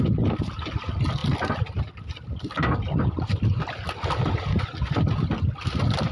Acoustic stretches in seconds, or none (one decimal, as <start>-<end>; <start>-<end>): 0.0-6.1